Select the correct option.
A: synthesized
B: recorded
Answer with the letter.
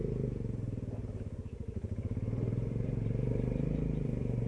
A